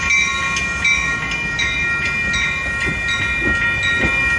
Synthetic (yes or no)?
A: no